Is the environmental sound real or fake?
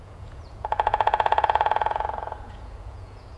fake